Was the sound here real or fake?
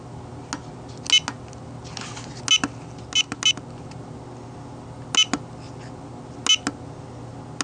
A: real